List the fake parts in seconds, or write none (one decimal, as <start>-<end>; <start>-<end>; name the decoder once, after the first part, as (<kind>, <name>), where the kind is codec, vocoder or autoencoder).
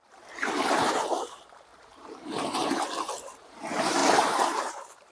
0.0-5.1 (vocoder, BigVGAN v2)